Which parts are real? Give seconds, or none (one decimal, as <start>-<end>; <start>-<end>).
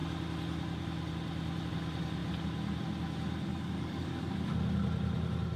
0.0-3.5; 4.3-5.6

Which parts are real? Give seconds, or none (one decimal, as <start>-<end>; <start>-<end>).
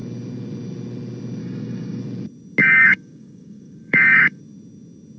0.0-1.4; 2.0-2.6; 4.4-5.2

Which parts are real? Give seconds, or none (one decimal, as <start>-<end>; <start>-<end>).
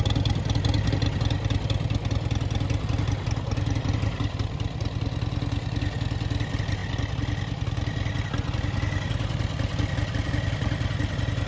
0.0-11.5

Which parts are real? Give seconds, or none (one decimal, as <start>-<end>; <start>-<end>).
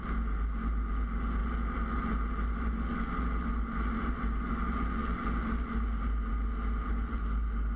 0.0-7.8